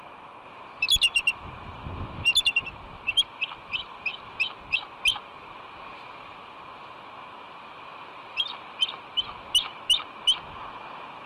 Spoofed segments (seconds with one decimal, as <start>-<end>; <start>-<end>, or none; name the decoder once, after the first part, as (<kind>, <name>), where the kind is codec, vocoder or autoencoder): none